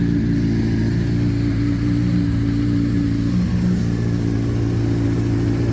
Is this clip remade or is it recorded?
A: recorded